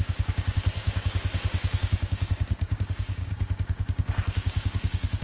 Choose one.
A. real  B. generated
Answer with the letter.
B